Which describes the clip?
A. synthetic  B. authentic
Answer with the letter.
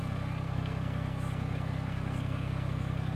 A